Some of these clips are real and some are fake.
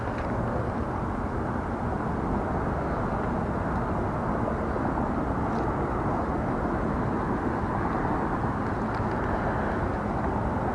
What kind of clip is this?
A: real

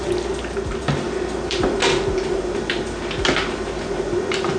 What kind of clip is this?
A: real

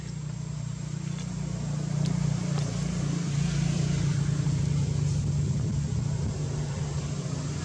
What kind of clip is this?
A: real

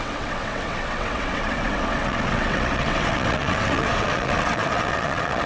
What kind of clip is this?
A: fake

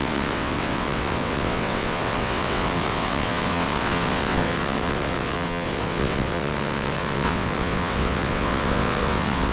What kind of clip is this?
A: fake